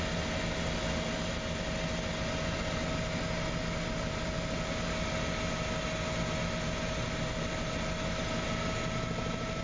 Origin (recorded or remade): recorded